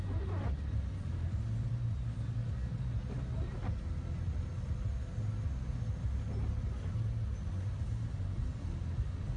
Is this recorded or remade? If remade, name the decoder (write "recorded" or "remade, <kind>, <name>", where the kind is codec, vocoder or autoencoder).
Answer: recorded